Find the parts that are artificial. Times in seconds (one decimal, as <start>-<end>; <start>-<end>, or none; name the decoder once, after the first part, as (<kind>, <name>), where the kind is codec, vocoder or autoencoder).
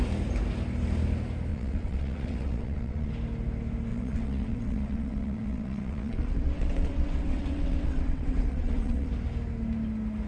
1.5-3.1 (vocoder, WaveNeXt); 3.9-9.1